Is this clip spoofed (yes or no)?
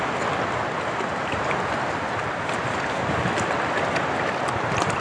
no